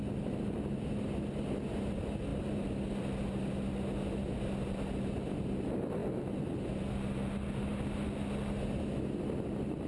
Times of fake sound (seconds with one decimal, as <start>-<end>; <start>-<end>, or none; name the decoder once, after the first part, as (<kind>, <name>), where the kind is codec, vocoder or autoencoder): none